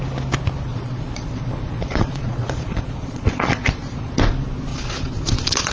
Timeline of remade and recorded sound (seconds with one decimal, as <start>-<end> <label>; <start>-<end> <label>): 0.0-0.7 recorded; 0.7-4.1 remade; 4.1-4.7 recorded; 4.7-5.7 remade